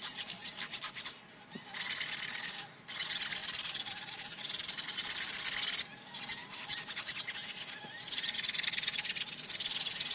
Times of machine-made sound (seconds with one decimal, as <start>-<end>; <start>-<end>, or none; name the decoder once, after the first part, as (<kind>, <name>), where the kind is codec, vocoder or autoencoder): 0.4-1.2 (vocoder, BigVGAN v2); 3.4-4.4

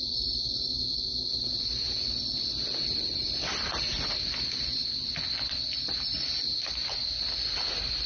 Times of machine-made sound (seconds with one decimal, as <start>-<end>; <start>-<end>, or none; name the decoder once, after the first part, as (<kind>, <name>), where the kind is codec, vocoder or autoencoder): none

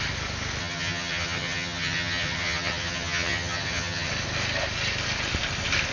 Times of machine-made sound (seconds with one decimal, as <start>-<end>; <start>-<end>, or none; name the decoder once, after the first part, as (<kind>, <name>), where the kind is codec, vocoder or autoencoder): 0.6-4.1 (vocoder, HiFi-GAN)

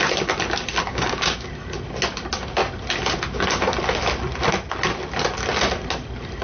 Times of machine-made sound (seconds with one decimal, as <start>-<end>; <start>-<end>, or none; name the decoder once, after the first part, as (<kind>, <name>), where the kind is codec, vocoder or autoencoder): 0.9-1.5 (codec, DAC)

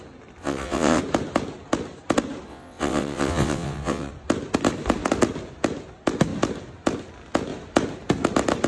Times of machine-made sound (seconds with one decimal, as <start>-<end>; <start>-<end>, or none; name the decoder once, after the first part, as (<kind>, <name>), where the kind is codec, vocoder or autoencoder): 0.4-1.0 (vocoder, WaveNeXt); 2.5-4.1

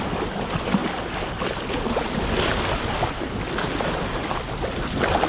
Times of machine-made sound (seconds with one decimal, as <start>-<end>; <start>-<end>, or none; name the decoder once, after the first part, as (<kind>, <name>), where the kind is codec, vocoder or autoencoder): none

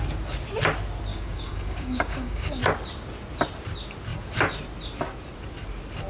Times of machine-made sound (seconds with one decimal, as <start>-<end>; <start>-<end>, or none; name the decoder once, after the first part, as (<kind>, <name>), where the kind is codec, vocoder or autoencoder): 1.1-2.6 (codec, DAC)